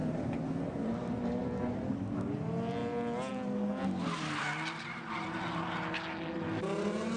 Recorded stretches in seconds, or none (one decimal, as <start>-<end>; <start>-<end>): 0.0-7.2